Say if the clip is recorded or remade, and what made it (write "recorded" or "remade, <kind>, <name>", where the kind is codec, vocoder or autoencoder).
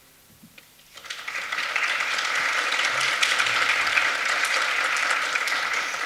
remade, vocoder, BigVGAN v2